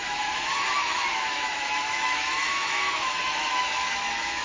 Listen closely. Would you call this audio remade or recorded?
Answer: remade